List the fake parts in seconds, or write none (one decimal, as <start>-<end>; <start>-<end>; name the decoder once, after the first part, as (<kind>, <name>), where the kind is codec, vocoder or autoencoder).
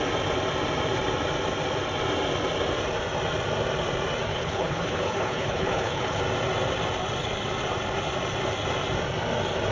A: 4.3-6.2 (codec, HILCodec)